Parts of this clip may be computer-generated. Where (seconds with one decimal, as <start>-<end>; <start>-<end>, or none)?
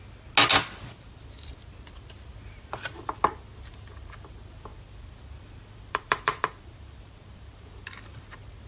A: 4.7-8.2